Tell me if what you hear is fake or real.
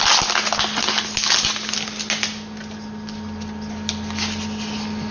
real